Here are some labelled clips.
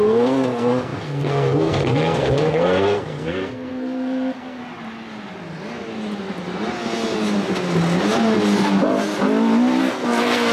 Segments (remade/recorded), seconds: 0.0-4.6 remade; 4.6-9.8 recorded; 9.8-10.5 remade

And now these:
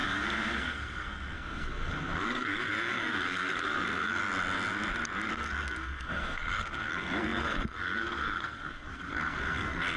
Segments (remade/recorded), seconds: 0.0-4.2 remade; 4.2-5.3 recorded; 5.3-10.0 remade

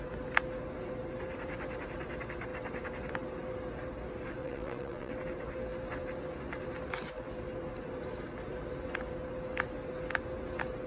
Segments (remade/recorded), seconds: 0.0-4.4 recorded; 4.4-5.1 remade; 5.1-10.9 recorded

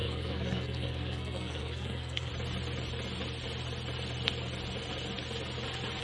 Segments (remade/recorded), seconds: 0.0-2.3 remade; 2.3-6.0 recorded